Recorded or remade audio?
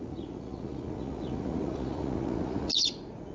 remade